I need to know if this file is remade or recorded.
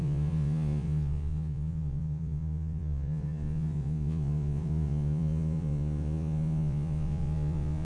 remade